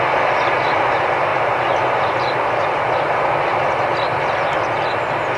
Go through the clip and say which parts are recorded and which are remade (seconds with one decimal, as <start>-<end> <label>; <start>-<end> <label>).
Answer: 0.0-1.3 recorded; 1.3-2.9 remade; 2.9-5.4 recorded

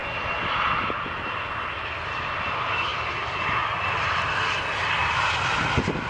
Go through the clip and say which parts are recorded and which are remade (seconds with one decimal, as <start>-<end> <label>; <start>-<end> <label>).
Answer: 0.0-2.9 recorded; 2.9-4.9 remade; 4.9-6.1 recorded

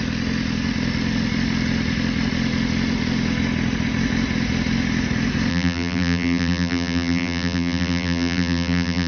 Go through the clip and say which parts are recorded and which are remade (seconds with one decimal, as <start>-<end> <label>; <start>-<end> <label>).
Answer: 0.0-5.5 recorded; 5.5-9.1 remade

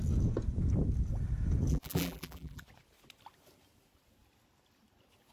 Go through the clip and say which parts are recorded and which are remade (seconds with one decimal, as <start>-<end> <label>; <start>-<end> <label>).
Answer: 0.0-1.7 recorded; 1.7-2.6 remade; 2.6-5.3 recorded